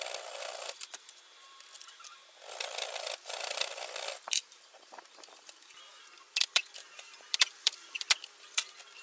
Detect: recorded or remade remade